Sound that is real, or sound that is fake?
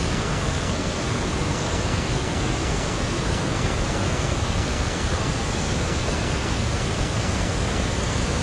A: fake